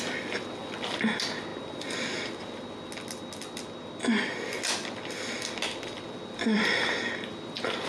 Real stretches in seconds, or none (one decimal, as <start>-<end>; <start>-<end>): 0.0-7.9